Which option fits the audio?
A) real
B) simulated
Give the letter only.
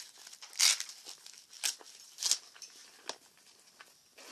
A